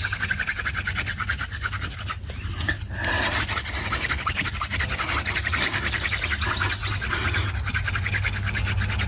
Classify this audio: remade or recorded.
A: recorded